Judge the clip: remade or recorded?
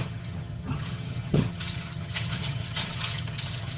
remade